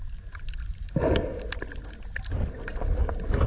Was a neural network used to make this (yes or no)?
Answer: no